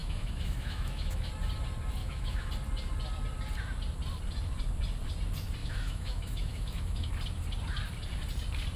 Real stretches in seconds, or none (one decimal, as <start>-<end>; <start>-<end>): 1.3-2.0; 2.5-5.6; 7.1-8.8